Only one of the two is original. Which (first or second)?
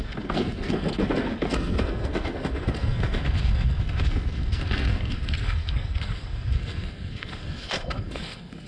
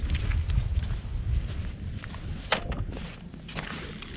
second